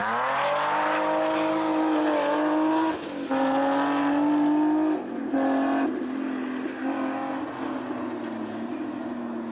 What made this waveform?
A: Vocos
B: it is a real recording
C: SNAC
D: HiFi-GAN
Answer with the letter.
B